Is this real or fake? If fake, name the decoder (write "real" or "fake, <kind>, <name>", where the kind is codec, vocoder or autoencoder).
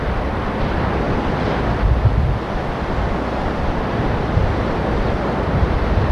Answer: fake, vocoder, BigVGAN v2